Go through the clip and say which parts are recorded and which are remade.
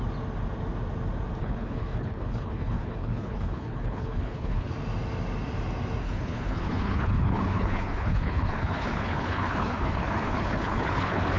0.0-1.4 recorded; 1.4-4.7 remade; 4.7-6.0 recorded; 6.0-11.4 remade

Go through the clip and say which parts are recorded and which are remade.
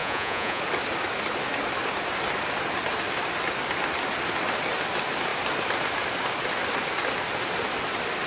0.0-0.6 remade; 0.6-8.3 recorded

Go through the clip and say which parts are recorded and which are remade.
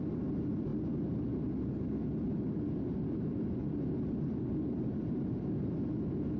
0.0-6.4 recorded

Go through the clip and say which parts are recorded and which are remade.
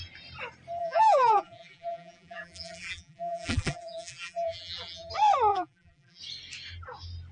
0.0-0.8 recorded; 0.8-5.1 remade; 5.1-5.5 recorded; 5.5-6.2 remade; 6.2-7.3 recorded